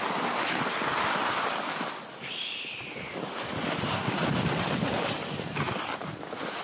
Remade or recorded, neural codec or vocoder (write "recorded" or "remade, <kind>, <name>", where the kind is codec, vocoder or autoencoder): recorded